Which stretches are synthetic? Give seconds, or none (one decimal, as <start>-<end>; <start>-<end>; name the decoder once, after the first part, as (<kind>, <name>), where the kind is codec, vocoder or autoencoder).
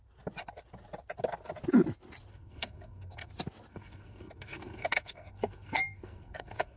2.3-3.3 (codec, SNAC); 3.7-6.8